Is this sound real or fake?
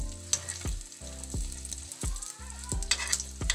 real